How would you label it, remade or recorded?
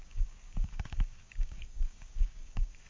remade